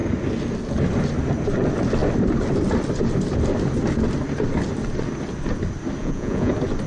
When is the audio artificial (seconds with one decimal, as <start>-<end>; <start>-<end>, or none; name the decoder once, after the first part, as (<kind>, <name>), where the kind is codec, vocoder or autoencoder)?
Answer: 6.0-6.5 (vocoder, Vocos)